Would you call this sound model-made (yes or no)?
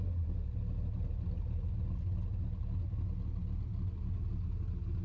no